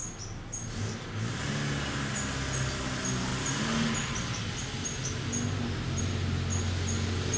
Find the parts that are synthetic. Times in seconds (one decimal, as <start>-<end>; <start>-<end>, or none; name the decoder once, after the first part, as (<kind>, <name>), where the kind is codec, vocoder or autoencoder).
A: none